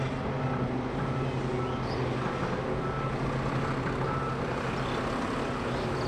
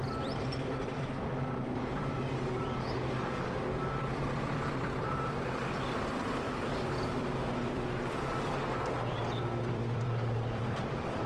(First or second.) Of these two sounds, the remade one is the second